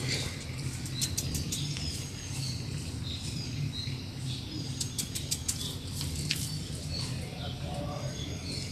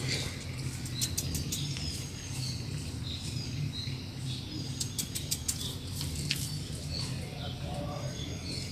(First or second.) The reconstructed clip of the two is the first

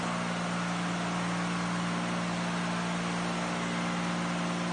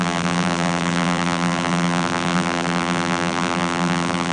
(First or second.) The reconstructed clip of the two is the second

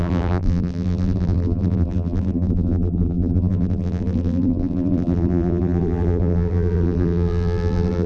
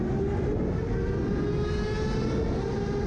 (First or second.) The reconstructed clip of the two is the first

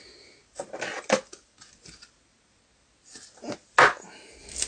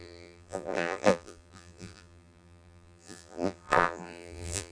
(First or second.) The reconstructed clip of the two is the second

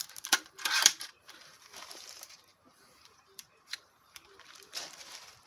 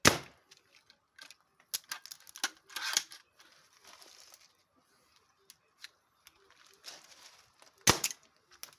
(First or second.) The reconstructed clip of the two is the first